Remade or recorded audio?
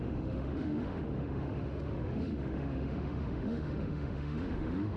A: remade